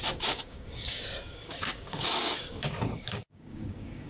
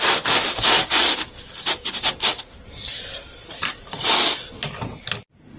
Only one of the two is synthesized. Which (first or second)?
first